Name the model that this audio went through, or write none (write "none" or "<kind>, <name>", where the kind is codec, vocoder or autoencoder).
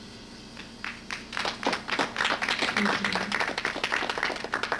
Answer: none